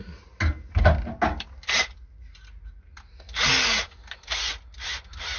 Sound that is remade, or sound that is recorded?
recorded